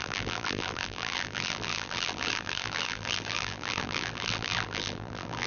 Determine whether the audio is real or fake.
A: fake